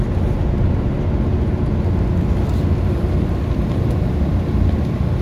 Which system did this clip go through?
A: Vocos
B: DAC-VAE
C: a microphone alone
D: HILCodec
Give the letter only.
C